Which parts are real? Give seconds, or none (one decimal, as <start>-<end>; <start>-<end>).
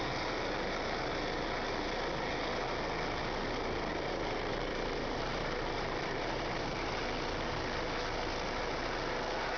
0.0-3.9; 7.0-9.6